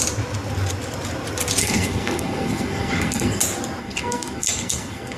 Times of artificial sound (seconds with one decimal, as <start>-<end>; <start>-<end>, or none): 1.6-3.4; 3.8-5.2